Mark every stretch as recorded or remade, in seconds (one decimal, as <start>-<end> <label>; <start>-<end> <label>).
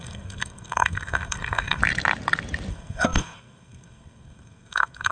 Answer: 0.0-1.8 remade; 1.8-2.7 recorded; 2.7-5.1 remade